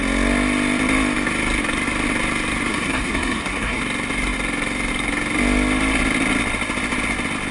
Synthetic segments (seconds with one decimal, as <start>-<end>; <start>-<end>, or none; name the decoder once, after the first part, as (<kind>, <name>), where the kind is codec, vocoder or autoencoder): 2.7-3.8 (codec, SNAC)